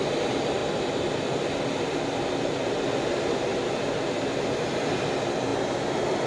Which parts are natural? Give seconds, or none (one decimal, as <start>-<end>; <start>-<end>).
0.0-6.3